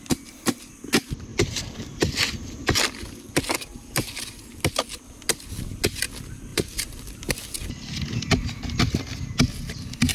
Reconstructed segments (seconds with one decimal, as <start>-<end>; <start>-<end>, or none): 1.3-3.4; 6.5-7.3